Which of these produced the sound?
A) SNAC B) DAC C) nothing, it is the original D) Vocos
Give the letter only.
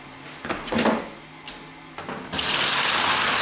C